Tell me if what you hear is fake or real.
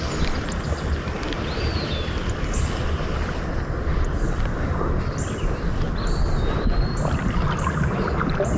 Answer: real